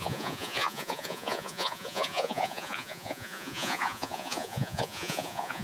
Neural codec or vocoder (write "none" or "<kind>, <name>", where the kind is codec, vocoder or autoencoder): vocoder, Vocos